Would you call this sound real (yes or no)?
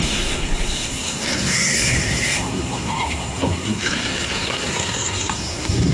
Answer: no